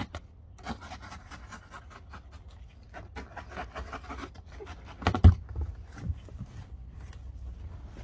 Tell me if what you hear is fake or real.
real